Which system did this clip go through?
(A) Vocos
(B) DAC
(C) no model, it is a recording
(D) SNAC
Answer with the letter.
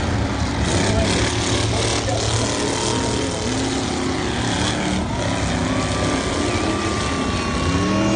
C